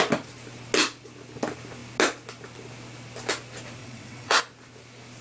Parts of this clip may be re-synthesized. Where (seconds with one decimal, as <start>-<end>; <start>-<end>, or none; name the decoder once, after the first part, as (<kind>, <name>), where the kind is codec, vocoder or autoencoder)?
3.8-4.4 (vocoder, WaveNeXt)